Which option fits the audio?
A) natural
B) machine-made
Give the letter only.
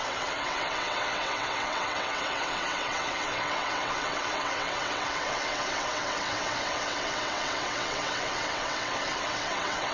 B